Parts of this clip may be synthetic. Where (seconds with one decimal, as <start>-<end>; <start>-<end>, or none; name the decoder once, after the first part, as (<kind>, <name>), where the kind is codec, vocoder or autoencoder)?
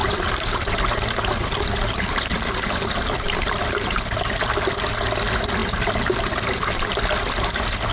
0.0-4.7 (vocoder, BigVGAN v2); 5.6-7.0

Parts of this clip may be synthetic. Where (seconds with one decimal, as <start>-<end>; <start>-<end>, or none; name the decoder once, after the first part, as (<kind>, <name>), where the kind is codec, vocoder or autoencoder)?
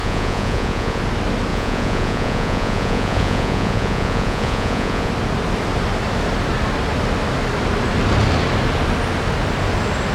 0.0-1.0 (vocoder, Vocos); 1.5-5.1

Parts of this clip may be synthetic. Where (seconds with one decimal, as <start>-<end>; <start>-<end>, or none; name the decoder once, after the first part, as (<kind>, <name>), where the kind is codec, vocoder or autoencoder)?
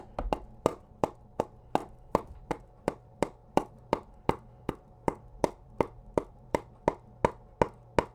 0.7-1.4 (vocoder, BigVGAN v2); 1.8-6.7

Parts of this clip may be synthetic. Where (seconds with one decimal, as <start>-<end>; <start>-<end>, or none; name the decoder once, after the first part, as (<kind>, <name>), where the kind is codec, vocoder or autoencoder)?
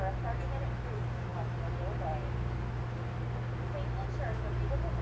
none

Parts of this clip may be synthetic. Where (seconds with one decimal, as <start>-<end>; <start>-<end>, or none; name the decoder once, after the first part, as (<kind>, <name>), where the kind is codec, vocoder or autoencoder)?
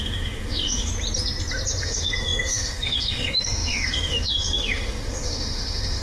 0.0-0.9 (autoencoder, DAC-VAE); 1.8-6.0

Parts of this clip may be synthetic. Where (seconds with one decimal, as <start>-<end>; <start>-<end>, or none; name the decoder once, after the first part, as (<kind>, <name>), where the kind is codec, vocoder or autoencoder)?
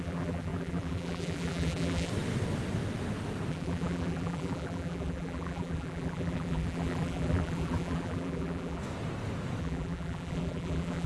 0.0-2.1 (vocoder, BigVGAN v2); 3.5-8.8; 9.6-11.1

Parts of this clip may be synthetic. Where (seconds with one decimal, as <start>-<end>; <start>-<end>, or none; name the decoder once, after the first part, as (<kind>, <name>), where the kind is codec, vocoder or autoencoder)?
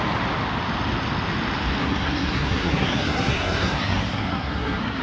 1.8-5.0 (codec, SNAC)